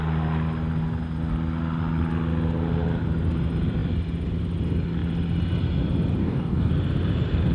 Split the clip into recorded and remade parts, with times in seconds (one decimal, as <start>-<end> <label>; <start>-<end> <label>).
0.0-6.2 recorded; 6.2-6.7 remade; 6.7-7.5 recorded